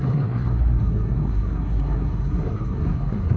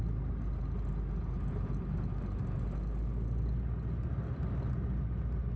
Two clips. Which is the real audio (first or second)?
second